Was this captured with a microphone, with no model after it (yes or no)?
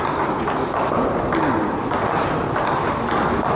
yes